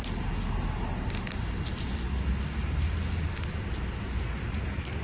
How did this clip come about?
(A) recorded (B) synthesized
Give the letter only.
A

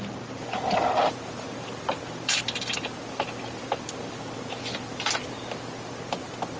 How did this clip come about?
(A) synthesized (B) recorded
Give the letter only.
B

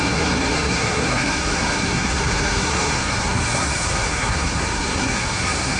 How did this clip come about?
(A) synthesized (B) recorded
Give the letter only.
A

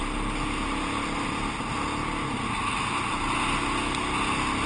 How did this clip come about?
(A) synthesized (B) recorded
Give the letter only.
B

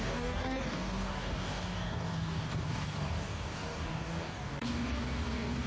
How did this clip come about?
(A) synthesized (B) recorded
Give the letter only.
A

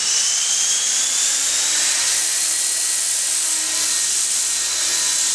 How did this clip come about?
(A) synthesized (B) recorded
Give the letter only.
B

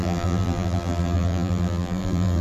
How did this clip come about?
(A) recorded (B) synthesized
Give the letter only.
B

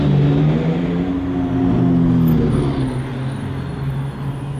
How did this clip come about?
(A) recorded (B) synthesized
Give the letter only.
A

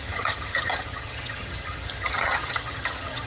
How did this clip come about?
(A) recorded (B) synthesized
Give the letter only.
B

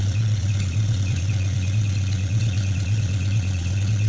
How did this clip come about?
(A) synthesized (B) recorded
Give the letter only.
A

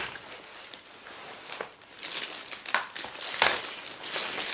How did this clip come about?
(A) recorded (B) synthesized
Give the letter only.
A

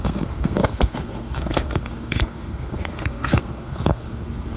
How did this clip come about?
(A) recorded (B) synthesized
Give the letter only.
B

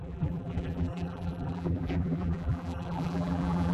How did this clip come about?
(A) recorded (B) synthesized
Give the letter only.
B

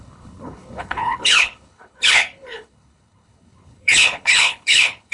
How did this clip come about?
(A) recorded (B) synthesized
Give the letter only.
B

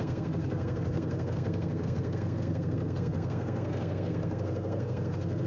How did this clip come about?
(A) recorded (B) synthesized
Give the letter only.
B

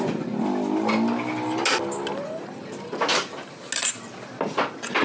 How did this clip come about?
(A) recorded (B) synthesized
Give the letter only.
A